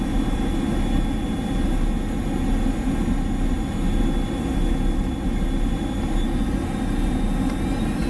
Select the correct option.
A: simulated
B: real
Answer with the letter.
B